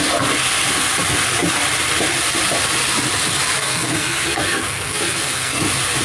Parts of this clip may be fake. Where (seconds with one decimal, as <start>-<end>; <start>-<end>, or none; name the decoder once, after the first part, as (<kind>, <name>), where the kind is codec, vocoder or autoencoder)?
3.6-5.6 (codec, SNAC)